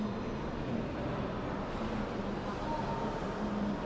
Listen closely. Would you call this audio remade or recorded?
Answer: recorded